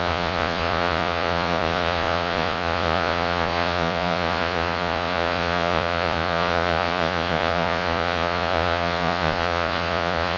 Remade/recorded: remade